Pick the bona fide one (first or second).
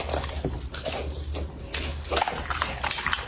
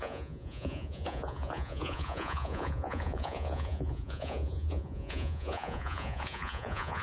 first